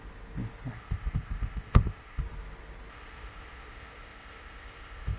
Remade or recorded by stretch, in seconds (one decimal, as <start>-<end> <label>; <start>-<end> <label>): 0.0-0.7 recorded; 0.7-2.2 remade; 2.2-2.9 recorded; 2.9-5.2 remade